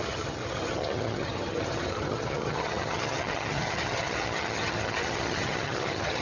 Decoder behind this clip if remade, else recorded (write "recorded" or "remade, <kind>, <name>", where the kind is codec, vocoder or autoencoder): remade, vocoder, HiFi-GAN